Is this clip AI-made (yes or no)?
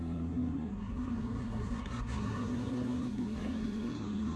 yes